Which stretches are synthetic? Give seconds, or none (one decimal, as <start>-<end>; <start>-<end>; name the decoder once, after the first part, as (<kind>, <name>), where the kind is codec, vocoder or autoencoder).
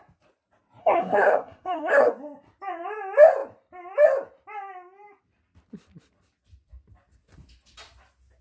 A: 0.8-2.1 (codec, SNAC)